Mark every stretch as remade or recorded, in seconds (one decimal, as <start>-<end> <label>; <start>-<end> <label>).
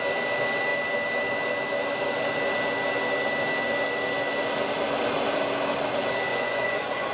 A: 0.0-6.3 recorded; 6.3-7.1 remade